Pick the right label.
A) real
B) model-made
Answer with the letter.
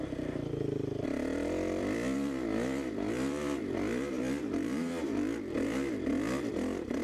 B